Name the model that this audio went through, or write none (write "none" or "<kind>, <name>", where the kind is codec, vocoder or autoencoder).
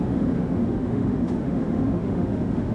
autoencoder, DAC-VAE